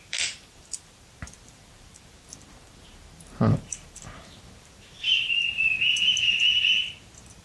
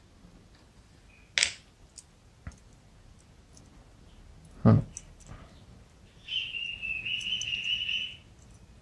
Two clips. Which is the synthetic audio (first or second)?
first